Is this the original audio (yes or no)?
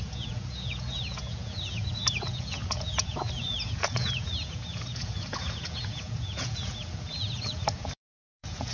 no